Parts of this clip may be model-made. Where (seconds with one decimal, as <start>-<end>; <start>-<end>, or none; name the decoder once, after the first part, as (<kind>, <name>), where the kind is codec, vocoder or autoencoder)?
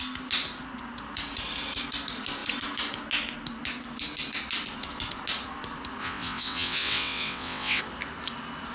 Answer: 6.0-7.8 (vocoder, WaveNeXt)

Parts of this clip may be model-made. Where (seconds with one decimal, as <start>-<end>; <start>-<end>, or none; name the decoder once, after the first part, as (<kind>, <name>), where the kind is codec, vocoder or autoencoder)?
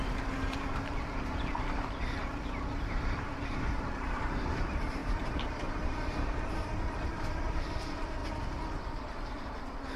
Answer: 0.0-8.2 (vocoder, BigVGAN v2); 8.8-10.0